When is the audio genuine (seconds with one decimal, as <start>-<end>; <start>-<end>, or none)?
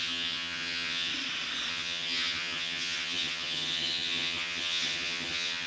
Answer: 1.1-1.7